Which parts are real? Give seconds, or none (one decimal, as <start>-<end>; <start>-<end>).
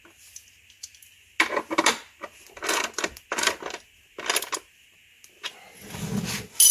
0.0-6.7